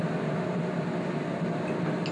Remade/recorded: recorded